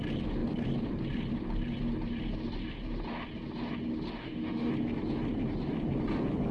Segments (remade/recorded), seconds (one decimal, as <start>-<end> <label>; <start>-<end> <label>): 0.0-4.2 recorded; 4.2-4.7 remade; 4.7-6.5 recorded